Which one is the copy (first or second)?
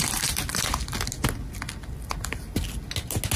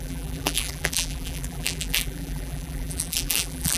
second